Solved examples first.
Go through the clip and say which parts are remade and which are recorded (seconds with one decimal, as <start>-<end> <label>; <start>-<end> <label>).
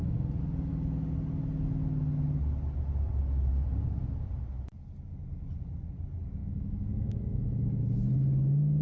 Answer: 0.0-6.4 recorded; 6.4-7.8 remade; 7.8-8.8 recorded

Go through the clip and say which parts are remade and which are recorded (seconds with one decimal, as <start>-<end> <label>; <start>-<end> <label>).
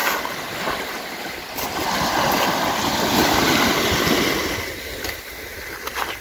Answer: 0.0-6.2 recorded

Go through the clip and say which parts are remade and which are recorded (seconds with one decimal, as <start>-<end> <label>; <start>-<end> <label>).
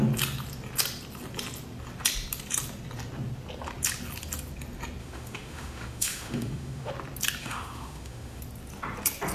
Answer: 0.0-5.0 recorded; 5.0-6.9 remade; 6.9-7.4 recorded; 7.4-8.4 remade; 8.4-9.3 recorded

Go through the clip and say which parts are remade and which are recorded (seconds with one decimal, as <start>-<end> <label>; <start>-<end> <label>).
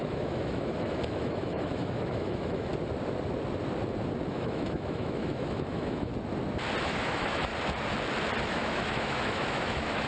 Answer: 0.0-2.7 remade; 2.7-4.3 recorded; 4.3-6.1 remade; 6.1-6.8 recorded; 6.8-7.5 remade; 7.5-8.4 recorded; 8.4-10.1 remade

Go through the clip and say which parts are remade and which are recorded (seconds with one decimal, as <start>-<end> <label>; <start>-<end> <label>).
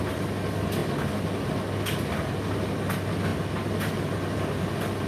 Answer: 0.0-5.1 recorded